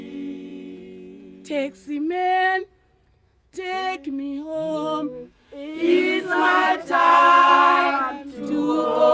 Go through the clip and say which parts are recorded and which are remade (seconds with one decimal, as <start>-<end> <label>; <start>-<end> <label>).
0.0-3.2 recorded; 3.2-7.5 remade; 7.5-9.1 recorded